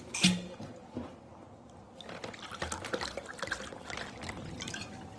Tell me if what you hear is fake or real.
real